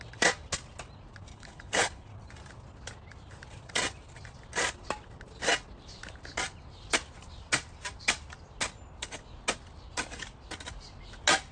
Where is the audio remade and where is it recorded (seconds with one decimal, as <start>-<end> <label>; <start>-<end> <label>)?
0.0-1.3 recorded; 1.3-2.1 remade; 2.1-11.5 recorded